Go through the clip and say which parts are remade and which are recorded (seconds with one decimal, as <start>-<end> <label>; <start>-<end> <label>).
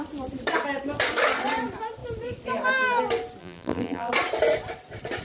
0.0-3.4 recorded; 3.4-4.1 remade; 4.1-5.2 recorded